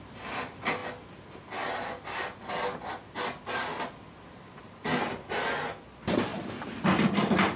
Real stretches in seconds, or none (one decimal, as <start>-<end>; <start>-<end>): 0.0-6.3